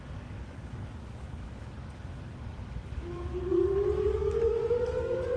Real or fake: fake